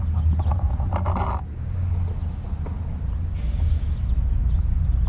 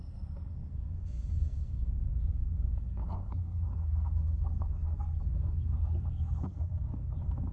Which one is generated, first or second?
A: second